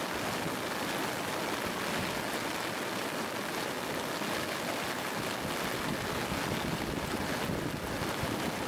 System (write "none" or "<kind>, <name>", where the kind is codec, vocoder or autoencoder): none